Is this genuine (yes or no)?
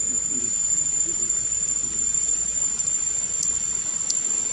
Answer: no